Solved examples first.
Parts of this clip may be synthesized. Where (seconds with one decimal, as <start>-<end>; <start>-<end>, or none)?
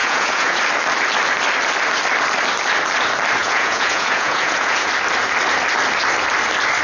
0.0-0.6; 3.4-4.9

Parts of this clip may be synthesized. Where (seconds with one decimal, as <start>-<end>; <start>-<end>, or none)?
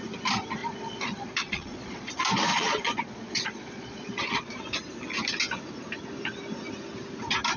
0.6-2.1; 2.5-4.6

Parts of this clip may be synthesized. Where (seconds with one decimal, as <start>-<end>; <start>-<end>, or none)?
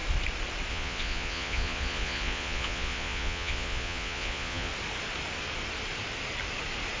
0.7-4.7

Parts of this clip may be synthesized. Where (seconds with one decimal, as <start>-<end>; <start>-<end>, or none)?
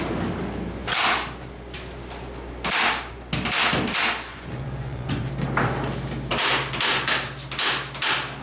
4.3-5.2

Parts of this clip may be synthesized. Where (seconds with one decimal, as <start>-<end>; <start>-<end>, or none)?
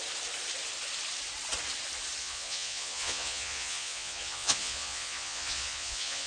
2.2-6.3